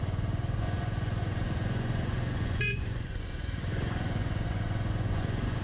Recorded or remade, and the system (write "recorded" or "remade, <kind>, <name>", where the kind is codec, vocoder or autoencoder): remade, vocoder, Vocos